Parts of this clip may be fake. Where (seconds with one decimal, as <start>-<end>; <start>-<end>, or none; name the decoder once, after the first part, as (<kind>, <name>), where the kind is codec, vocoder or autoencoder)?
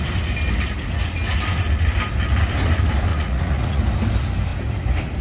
3.1-3.8 (vocoder, Vocos)